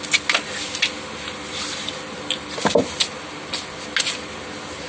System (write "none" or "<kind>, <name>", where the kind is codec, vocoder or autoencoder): none